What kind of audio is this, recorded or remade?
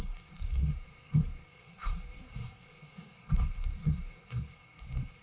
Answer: remade